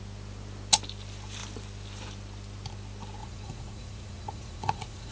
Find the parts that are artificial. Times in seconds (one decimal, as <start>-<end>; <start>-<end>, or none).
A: 3.2-5.1